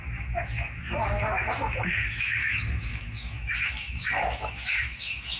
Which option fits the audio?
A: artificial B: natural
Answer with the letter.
A